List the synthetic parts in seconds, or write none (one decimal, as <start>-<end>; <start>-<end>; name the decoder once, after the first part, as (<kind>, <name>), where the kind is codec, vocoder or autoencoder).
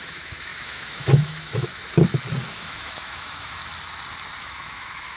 0.0-1.8 (autoencoder, DAC-VAE); 2.5-3.6; 4.4-5.2